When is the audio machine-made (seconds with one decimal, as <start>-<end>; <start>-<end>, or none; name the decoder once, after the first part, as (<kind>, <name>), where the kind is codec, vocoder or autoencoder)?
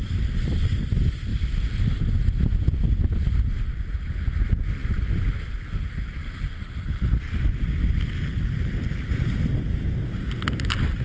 none